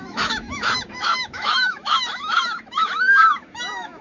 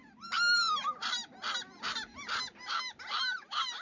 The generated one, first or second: first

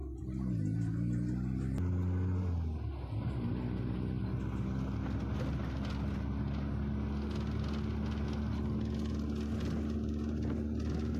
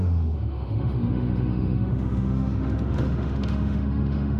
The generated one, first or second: second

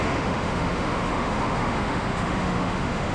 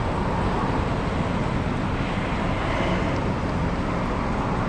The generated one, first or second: first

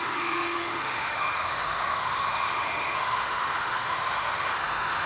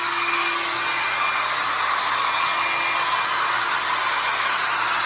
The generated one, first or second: first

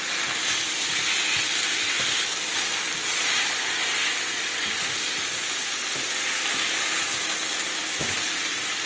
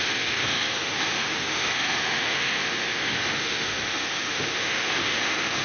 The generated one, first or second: second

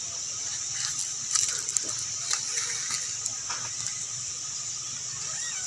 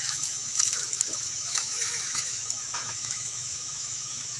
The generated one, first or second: second